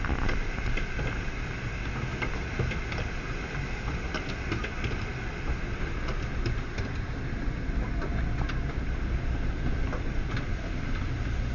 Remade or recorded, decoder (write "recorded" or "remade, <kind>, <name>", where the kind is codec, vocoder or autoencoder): recorded